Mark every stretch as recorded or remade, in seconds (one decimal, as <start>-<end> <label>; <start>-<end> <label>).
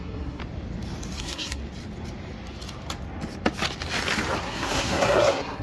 0.0-0.4 remade; 0.4-1.2 recorded; 1.2-1.6 remade; 1.6-4.4 recorded; 4.4-5.6 remade